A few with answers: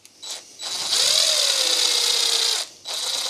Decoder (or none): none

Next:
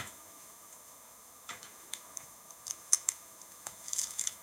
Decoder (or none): autoencoder, DAC-VAE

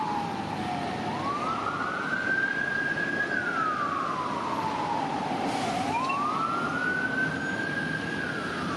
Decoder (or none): none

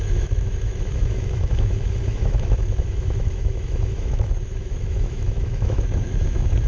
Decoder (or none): autoencoder, DAC-VAE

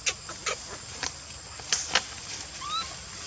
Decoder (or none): none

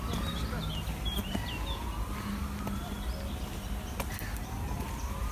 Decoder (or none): none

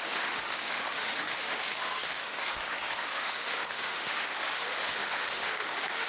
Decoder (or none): autoencoder, DAC-VAE